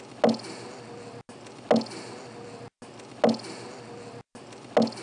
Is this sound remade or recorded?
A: recorded